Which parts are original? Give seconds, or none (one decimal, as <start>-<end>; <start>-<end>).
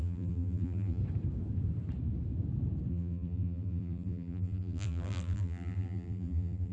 1.0-2.9